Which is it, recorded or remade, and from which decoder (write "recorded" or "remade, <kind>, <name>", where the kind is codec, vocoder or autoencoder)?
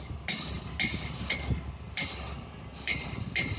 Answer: recorded